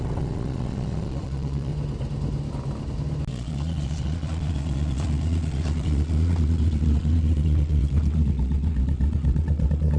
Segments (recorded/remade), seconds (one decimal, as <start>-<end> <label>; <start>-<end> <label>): 0.0-1.7 remade; 1.7-3.3 recorded; 3.3-10.0 remade